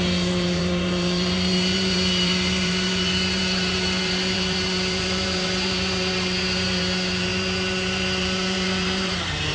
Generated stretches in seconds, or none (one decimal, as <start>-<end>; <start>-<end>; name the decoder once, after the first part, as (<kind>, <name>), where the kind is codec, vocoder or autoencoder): 0.0-9.5 (vocoder, BigVGAN v2)